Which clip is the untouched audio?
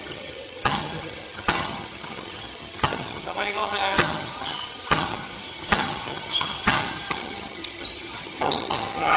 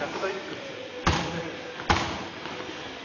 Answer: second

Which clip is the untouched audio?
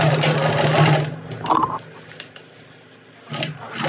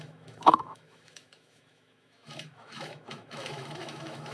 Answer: first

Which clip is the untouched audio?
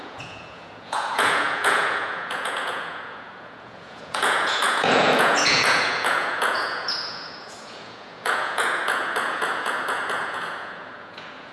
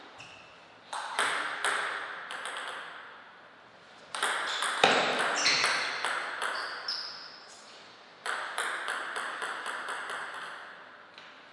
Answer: second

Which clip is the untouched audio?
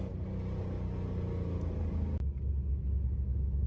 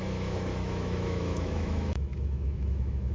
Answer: first